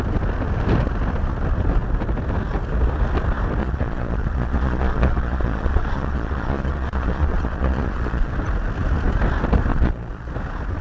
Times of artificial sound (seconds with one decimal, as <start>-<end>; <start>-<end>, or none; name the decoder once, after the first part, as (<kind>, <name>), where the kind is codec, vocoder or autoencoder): 3.6-8.3 (vocoder, Vocos); 9.7-10.3